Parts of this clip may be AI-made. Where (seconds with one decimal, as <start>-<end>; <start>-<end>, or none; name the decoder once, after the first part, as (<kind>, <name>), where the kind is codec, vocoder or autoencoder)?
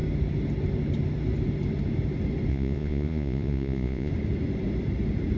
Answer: 2.5-4.1 (vocoder, Vocos)